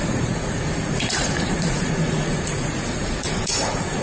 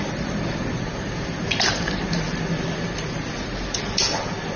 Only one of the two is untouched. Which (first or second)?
second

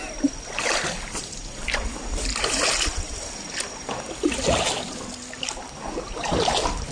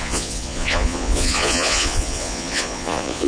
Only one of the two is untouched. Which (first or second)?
first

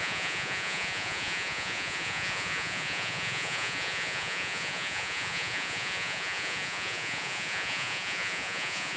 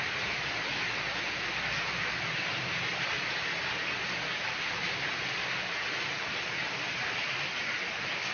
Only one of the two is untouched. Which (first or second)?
second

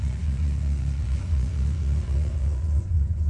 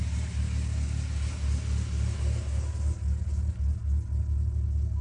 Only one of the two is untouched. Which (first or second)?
second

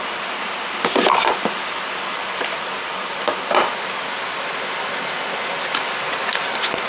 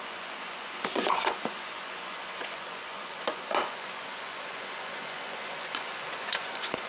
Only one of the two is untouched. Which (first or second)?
first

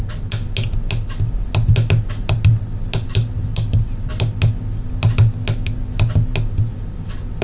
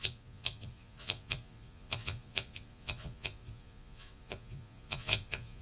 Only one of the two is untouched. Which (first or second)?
first